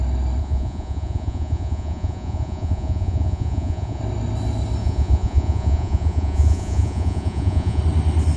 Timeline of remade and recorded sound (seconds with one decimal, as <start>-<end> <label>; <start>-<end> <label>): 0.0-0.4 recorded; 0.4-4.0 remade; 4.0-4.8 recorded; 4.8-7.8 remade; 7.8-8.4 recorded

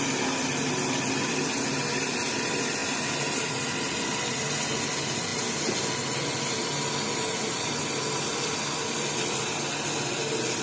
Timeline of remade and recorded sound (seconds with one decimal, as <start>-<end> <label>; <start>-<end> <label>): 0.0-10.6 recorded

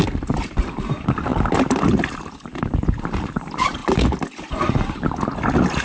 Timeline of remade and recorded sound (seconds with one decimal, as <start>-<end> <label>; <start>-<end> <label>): 0.0-5.8 recorded